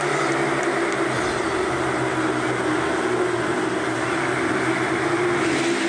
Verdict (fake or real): real